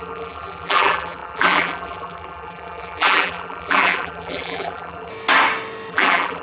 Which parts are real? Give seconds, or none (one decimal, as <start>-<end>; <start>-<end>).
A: 5.1-5.9